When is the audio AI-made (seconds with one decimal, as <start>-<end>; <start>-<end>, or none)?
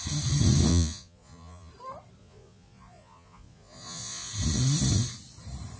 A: 0.7-1.7; 2.2-4.3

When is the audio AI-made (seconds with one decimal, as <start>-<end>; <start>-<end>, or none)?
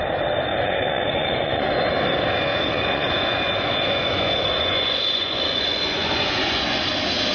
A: 0.5-1.7; 2.5-6.8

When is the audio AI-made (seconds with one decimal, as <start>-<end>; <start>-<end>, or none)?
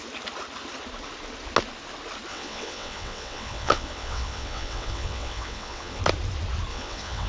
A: 2.3-6.0; 6.7-7.3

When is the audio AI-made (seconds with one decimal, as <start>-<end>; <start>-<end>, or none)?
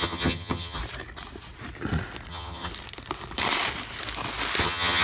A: 0.0-0.8; 2.3-2.7; 4.6-5.0